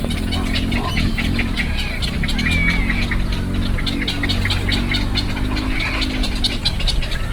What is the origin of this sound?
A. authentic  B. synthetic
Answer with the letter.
A